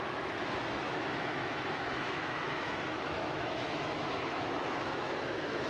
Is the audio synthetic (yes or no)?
yes